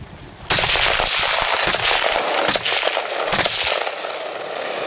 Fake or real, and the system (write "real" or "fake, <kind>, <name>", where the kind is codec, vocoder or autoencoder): real